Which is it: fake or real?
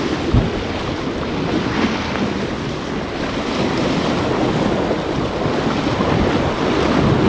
real